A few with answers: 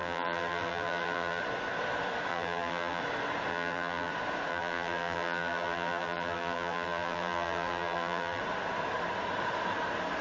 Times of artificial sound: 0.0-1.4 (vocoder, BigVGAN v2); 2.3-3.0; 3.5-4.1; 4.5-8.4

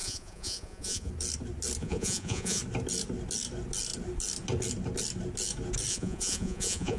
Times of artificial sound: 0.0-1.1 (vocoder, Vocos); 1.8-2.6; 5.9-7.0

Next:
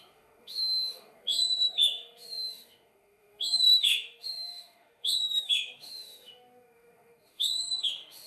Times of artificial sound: 0.0-8.3 (autoencoder, DAC-VAE)

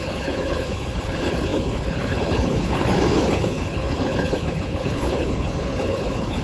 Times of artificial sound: 0.0-6.4 (codec, HILCodec)

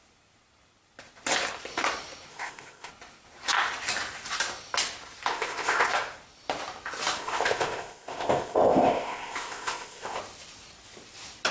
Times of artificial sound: 2.3-2.9 (codec, ZipCodec); 5.3-5.9; 7.2-10.2

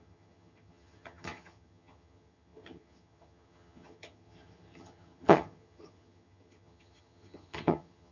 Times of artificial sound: 0.0-8.1 (vocoder, HiFi-GAN)

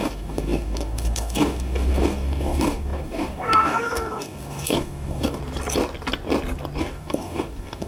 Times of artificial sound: 0.0-5.4 (codec, DAC); 6.8-7.9